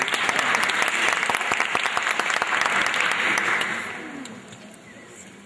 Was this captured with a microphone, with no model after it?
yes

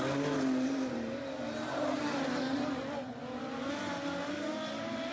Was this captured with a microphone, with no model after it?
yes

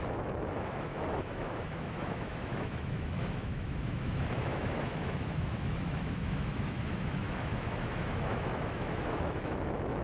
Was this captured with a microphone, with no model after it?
no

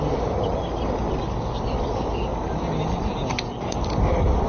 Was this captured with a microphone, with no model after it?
yes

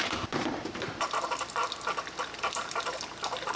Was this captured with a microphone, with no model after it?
no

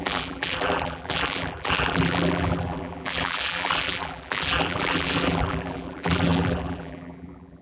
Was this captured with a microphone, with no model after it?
no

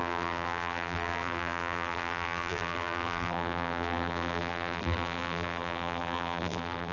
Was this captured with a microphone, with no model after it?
no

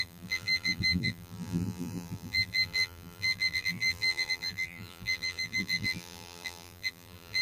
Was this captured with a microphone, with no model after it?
no